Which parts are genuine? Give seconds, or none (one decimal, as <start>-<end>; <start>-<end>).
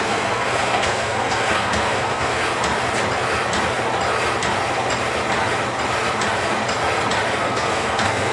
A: 2.4-7.4